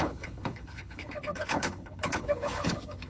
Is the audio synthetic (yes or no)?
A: yes